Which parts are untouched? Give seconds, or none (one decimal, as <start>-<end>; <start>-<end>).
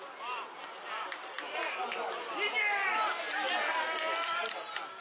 0.0-5.0